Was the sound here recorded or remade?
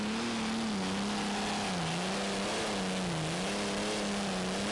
recorded